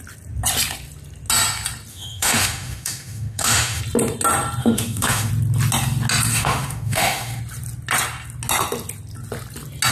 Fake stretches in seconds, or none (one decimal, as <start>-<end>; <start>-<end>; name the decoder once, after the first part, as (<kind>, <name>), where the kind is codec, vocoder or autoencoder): 1.9-3.8 (autoencoder, DAC-VAE); 4.6-5.3; 6.3-7.4